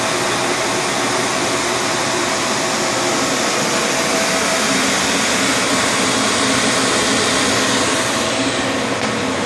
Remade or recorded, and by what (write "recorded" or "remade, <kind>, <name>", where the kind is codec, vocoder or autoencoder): recorded